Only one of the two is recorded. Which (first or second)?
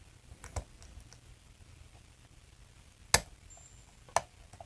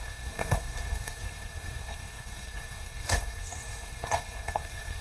first